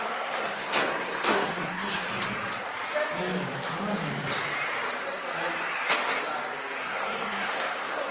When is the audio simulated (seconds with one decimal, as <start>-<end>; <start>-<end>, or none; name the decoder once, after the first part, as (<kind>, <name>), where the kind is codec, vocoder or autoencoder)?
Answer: 0.0-2.0 (codec, SNAC); 6.8-8.1